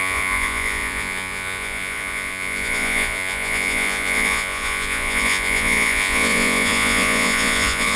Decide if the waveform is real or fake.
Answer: fake